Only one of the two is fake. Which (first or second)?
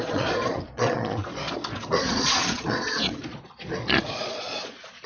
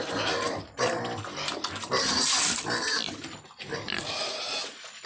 first